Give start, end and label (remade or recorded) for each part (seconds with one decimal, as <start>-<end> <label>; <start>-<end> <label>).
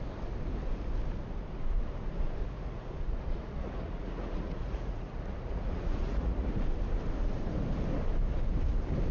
0.0-2.4 recorded; 2.4-6.5 remade; 6.5-9.1 recorded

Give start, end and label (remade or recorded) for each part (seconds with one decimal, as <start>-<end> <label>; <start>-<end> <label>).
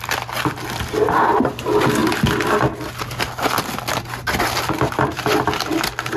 0.0-6.2 recorded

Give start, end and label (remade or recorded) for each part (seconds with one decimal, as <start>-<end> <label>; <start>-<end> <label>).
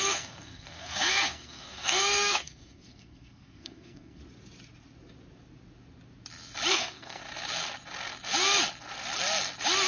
0.0-4.2 remade; 4.2-6.7 recorded; 6.7-7.2 remade; 7.2-9.9 recorded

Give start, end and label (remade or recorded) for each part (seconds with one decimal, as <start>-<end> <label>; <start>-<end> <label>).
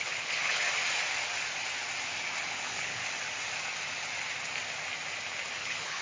0.0-0.6 remade; 0.6-2.4 recorded; 2.4-3.0 remade; 3.0-5.6 recorded; 5.6-6.0 remade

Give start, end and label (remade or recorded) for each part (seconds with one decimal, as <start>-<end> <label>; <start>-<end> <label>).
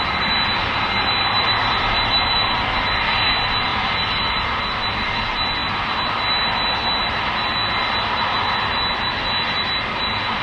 0.0-0.6 recorded; 0.6-3.1 remade; 3.1-3.7 recorded; 3.7-4.6 remade; 4.6-10.4 recorded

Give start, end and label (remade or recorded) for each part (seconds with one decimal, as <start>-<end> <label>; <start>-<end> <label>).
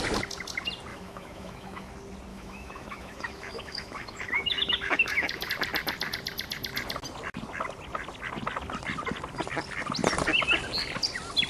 0.0-0.9 recorded; 0.9-1.9 remade; 1.9-2.3 recorded; 2.3-5.5 remade; 5.5-11.5 recorded